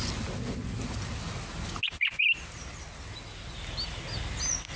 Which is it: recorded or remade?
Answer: recorded